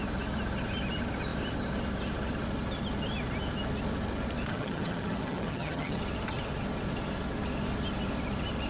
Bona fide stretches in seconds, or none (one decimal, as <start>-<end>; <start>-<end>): 0.0-4.5; 6.0-8.7